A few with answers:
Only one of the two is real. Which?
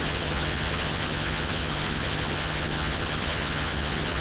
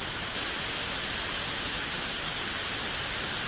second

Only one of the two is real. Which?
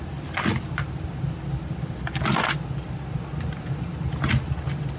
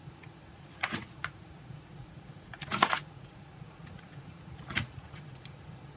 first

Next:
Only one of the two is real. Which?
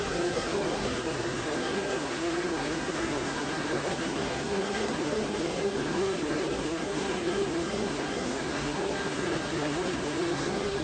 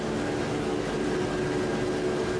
second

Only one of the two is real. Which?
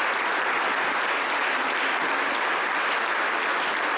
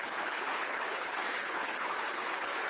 first